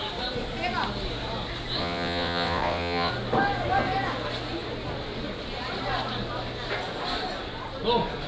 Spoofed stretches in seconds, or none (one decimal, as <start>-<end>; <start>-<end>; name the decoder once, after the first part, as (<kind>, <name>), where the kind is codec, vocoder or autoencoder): 1.8-3.1 (vocoder, WaveNeXt)

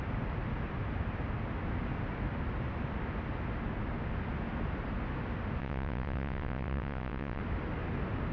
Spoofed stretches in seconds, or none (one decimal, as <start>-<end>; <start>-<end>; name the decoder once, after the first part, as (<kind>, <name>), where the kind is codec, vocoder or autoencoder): 5.6-7.4 (vocoder, WaveNeXt)

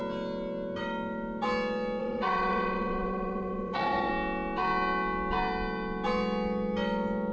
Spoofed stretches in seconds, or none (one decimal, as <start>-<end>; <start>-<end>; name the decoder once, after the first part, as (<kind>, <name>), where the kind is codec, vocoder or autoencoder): 2.0-4.1 (vocoder, WaveNeXt)

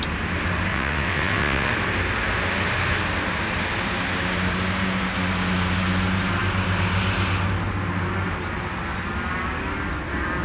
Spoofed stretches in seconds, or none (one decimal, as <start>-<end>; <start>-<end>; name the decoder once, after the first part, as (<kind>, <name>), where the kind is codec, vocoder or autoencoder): 0.7-1.7 (vocoder, WaveNeXt)

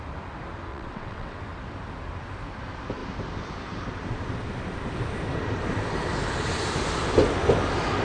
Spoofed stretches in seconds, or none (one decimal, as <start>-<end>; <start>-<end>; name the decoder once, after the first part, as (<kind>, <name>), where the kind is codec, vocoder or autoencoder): 0.7-1.4 (vocoder, WaveNeXt)

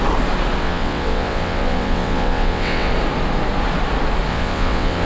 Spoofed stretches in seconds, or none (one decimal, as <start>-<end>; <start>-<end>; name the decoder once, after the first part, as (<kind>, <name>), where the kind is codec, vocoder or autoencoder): 0.6-2.9 (vocoder, WaveNeXt); 4.3-5.1